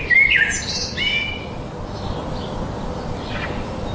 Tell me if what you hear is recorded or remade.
recorded